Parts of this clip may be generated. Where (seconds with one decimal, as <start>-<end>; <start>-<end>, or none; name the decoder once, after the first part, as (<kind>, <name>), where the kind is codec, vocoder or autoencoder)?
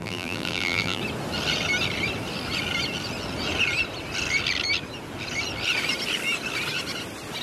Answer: 0.0-1.0 (vocoder, BigVGAN v2)